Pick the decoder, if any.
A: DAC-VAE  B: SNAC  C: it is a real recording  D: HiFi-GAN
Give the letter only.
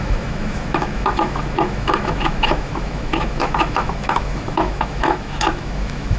A